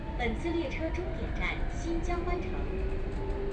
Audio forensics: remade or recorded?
recorded